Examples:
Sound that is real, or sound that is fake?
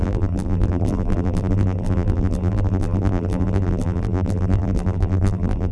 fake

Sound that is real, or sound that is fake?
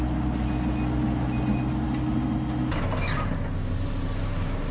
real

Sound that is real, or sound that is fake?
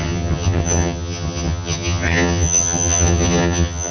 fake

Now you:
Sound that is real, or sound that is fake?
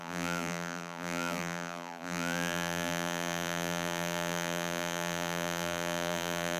fake